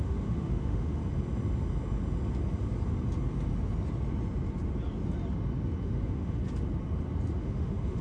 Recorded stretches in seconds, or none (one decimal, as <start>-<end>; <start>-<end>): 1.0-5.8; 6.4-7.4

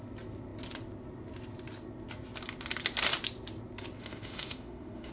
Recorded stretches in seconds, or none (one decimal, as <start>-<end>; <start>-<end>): 0.0-4.0

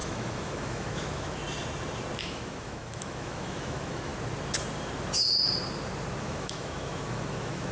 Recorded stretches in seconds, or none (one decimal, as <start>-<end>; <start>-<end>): 1.4-2.2; 4.1-6.2

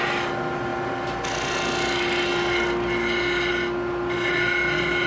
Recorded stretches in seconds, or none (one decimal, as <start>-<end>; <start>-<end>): 0.0-5.1